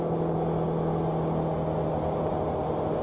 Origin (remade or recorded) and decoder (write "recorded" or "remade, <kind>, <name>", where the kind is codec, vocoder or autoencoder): recorded